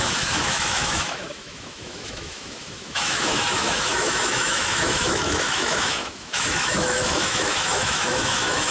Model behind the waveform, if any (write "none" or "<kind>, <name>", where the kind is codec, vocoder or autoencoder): autoencoder, DAC-VAE